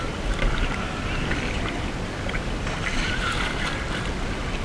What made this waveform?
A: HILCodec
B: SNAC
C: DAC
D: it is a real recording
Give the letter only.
D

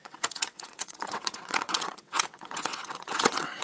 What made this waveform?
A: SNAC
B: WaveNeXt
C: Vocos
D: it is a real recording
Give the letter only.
B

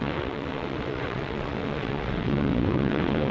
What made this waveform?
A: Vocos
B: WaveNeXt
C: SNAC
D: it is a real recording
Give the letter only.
B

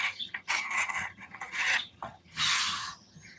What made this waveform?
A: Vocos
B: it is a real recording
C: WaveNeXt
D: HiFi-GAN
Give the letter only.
D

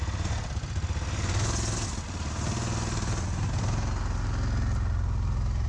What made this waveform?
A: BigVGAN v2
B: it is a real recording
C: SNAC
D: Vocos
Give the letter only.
B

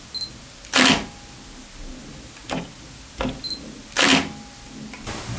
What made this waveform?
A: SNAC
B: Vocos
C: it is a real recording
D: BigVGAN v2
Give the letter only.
C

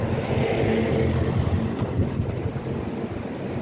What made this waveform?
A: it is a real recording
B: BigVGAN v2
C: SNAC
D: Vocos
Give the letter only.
A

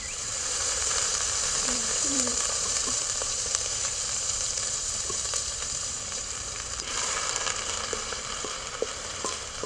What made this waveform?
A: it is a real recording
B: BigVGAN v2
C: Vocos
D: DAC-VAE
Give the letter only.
B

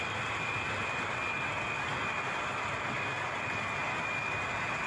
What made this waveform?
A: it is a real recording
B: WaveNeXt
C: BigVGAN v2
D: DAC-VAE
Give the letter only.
A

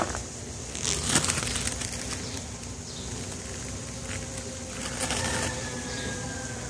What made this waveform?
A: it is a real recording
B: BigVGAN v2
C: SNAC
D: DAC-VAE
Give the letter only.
A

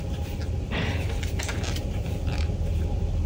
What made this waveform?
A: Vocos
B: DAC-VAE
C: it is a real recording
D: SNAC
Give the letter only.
C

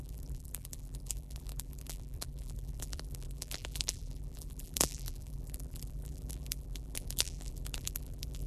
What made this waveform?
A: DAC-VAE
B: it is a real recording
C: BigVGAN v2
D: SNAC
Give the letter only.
C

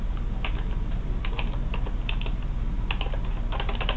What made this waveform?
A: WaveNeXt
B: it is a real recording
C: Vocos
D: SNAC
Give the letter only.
B